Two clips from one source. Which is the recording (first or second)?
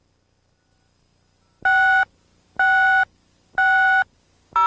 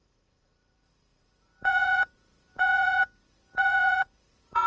first